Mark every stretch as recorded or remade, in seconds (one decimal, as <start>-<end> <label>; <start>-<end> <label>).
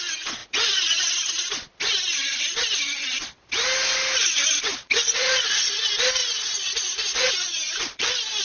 0.0-0.4 recorded; 0.4-1.0 remade; 1.0-4.7 recorded; 4.7-5.8 remade; 5.8-6.2 recorded; 6.2-7.3 remade; 7.3-8.4 recorded